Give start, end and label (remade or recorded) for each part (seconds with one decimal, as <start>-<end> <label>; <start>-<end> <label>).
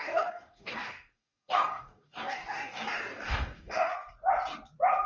0.0-3.9 remade; 3.9-5.1 recorded